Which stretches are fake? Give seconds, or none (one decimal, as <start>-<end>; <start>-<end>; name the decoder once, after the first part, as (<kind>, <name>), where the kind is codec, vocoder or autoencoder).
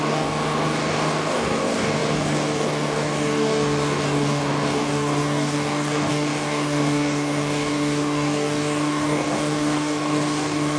0.0-10.8 (codec, DAC)